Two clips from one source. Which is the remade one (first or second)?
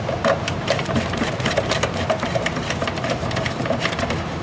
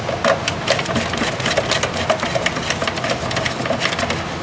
first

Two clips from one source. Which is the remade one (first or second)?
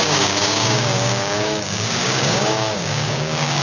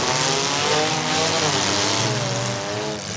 first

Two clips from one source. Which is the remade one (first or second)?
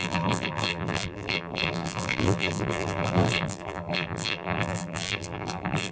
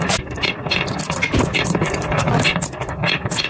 first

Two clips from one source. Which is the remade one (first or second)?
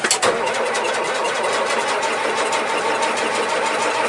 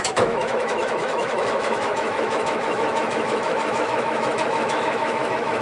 second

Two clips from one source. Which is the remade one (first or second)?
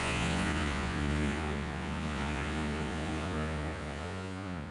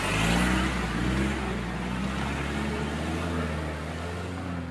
first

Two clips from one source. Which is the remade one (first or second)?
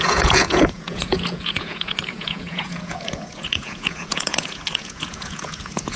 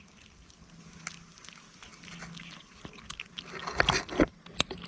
first